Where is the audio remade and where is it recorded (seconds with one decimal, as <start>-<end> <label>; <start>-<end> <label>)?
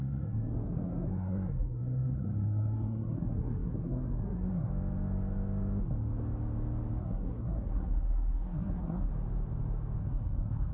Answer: 0.0-4.7 remade; 4.7-7.0 recorded; 7.0-9.1 remade; 9.1-10.0 recorded; 10.0-10.7 remade